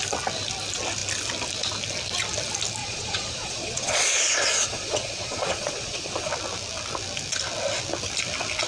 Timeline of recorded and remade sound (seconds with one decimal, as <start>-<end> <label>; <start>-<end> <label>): 0.0-2.8 recorded; 2.8-6.3 remade; 6.3-8.7 recorded